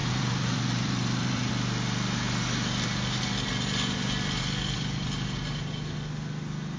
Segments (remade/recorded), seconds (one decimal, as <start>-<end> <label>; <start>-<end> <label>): 0.0-1.5 remade; 1.5-6.8 recorded

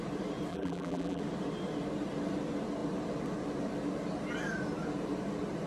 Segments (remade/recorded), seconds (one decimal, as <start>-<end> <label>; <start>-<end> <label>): 0.0-0.5 recorded; 0.5-1.2 remade; 1.2-5.7 recorded